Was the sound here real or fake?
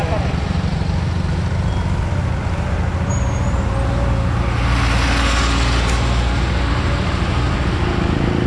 real